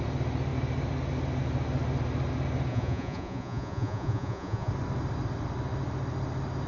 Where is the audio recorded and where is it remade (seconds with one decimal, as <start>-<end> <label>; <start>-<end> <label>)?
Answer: 0.0-2.7 recorded; 2.7-4.7 remade; 4.7-6.7 recorded